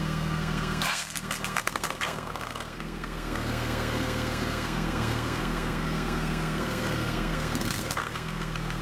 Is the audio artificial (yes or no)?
yes